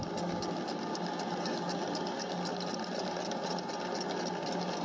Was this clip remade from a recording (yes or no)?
no